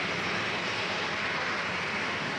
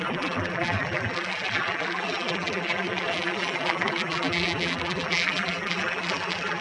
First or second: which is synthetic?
second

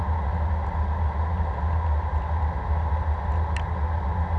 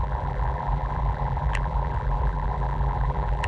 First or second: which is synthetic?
second